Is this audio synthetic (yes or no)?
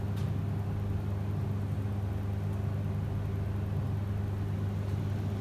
no